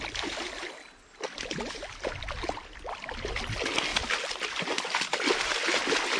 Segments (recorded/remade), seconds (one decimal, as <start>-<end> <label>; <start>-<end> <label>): 0.0-6.2 recorded